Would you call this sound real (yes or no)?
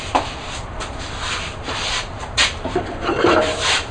no